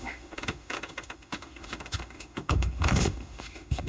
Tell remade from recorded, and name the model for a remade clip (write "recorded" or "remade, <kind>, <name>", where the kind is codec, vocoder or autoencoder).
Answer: remade, autoencoder, DAC-VAE